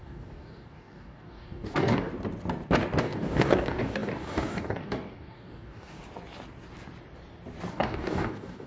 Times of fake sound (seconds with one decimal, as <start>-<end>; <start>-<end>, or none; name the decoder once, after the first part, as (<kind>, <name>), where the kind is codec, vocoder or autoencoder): 0.0-2.1 (codec, DAC); 3.0-6.0; 7.7-8.7